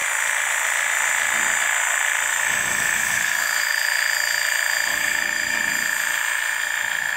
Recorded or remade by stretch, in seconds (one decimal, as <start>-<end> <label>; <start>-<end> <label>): 0.0-2.3 recorded; 2.3-3.7 remade; 3.7-4.9 recorded; 4.9-5.7 remade; 5.7-7.2 recorded